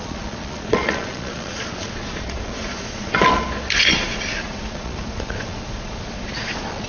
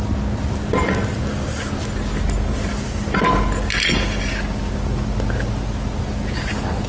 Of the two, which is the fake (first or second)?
first